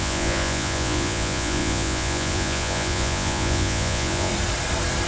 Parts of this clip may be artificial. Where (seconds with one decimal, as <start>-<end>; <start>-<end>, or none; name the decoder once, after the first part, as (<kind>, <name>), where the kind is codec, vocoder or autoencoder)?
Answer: 0.0-4.3 (vocoder, Vocos)